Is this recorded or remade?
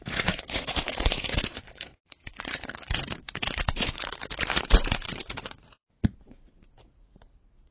remade